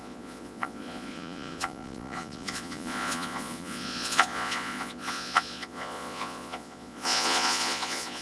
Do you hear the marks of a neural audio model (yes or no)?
yes